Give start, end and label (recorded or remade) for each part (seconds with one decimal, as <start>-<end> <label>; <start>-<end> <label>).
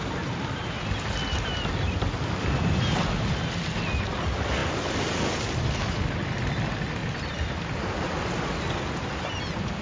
0.0-9.8 recorded